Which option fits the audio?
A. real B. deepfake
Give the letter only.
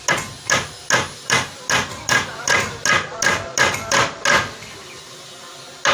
A